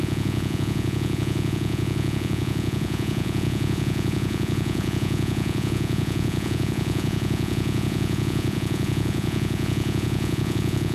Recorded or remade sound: remade